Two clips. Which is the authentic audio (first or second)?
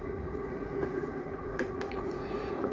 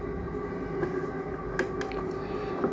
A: second